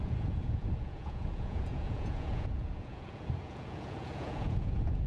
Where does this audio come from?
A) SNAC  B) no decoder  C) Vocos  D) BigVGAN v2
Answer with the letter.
C